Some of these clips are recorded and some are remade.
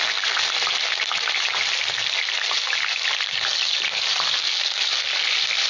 recorded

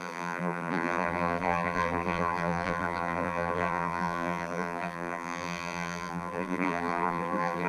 remade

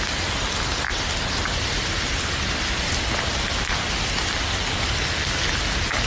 recorded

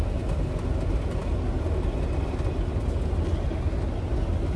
recorded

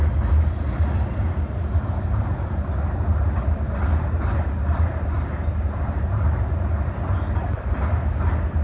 recorded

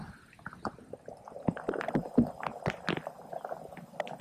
recorded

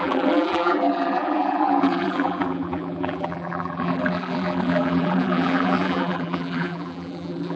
remade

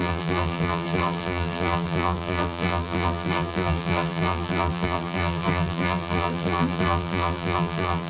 remade